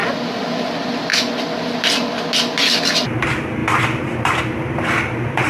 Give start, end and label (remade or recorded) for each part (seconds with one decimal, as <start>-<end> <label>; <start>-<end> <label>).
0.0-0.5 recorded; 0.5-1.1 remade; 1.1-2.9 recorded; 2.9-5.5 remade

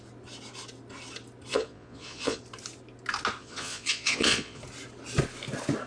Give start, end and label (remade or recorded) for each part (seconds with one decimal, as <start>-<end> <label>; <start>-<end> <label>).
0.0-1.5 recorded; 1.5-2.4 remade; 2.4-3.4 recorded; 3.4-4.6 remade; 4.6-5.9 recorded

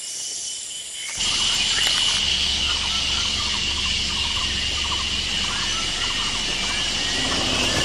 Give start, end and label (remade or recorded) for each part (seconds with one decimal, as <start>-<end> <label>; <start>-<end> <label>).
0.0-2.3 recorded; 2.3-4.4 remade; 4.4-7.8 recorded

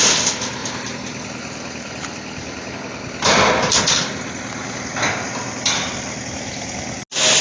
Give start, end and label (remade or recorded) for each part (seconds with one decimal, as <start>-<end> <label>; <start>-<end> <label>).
0.0-0.6 recorded; 0.6-2.7 remade; 2.7-7.4 recorded

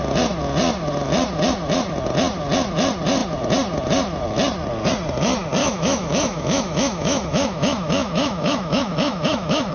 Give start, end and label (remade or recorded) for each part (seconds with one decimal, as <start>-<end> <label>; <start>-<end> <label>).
0.0-5.6 recorded; 5.6-9.7 remade

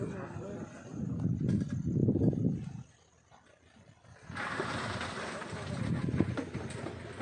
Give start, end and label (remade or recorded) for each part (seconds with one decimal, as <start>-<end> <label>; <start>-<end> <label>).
0.0-7.2 recorded